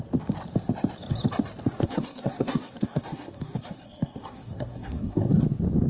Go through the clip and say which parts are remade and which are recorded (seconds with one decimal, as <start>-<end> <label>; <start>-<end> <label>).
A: 0.0-1.8 recorded; 1.8-5.3 remade; 5.3-5.9 recorded

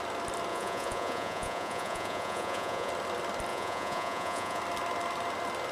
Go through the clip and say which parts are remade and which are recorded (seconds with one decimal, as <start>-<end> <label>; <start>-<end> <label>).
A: 0.0-0.5 recorded; 0.5-2.9 remade; 2.9-3.5 recorded; 3.5-4.6 remade; 4.6-5.7 recorded

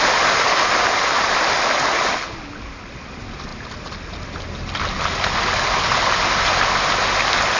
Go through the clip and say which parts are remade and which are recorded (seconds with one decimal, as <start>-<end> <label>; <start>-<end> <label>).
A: 0.0-7.6 recorded

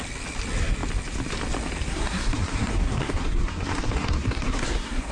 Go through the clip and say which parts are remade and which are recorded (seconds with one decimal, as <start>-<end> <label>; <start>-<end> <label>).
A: 0.0-1.9 recorded; 1.9-5.1 remade

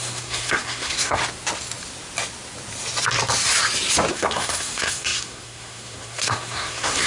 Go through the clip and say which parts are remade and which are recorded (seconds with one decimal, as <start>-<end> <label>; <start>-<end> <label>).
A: 0.0-1.2 remade; 1.2-4.1 recorded; 4.1-7.1 remade

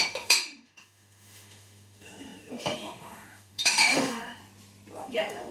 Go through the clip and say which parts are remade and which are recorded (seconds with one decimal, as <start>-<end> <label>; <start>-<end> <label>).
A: 0.0-4.4 remade; 4.4-5.0 recorded; 5.0-5.5 remade

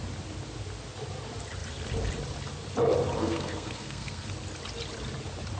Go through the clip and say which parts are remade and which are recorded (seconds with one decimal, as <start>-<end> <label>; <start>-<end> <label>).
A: 0.0-3.2 recorded; 3.2-4.3 remade; 4.3-5.6 recorded